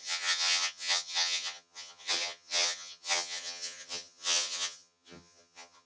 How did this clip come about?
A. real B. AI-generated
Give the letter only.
B